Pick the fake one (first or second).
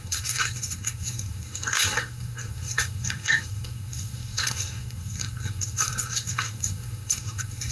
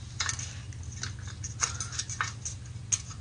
first